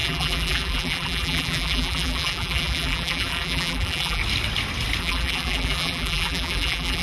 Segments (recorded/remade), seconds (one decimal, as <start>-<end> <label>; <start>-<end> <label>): 0.0-4.2 remade; 4.2-5.0 recorded; 5.0-7.0 remade